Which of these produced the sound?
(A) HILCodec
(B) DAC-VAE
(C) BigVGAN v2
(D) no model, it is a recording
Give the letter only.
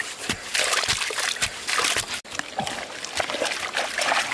D